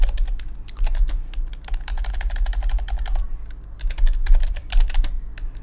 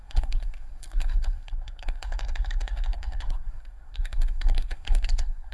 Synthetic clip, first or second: second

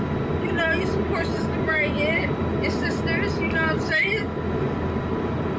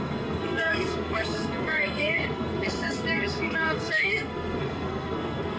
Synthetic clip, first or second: second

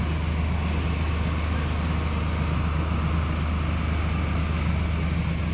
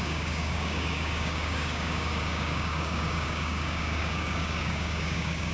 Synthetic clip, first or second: second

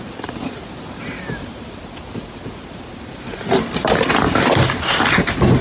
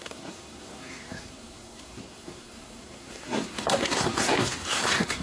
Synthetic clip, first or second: second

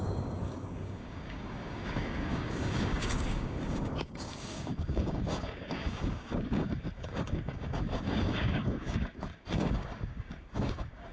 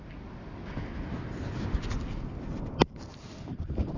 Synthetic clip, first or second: first